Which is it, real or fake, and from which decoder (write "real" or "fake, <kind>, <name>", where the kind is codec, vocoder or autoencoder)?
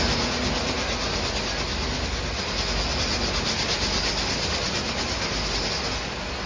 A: real